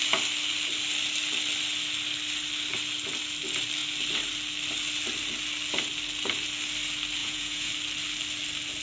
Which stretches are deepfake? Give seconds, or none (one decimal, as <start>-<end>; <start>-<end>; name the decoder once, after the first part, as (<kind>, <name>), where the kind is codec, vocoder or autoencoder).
7.2-7.7 (vocoder, Vocos)